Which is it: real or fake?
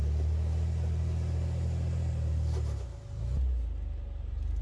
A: real